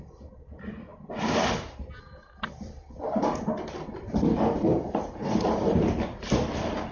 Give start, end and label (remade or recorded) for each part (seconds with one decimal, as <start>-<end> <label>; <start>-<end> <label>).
0.0-0.9 remade; 0.9-1.7 recorded; 1.7-6.9 remade